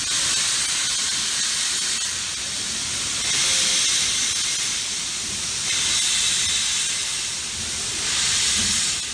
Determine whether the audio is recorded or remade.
recorded